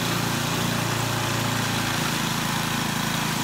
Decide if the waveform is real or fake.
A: real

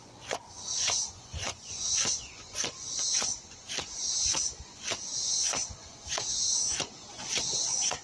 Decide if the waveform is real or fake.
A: fake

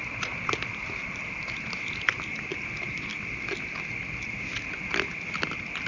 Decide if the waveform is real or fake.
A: real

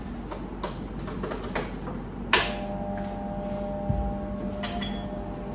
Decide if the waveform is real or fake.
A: real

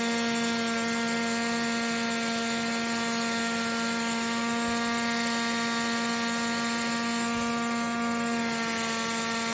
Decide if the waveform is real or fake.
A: real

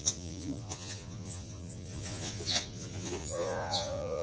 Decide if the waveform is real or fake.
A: fake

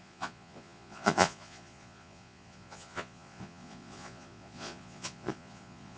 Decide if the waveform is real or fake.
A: fake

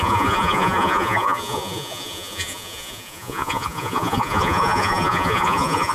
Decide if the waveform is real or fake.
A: fake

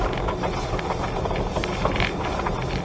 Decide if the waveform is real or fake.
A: real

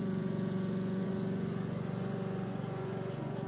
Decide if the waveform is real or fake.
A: fake